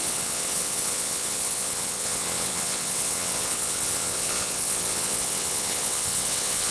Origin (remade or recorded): remade